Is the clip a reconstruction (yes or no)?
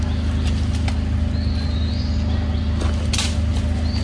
no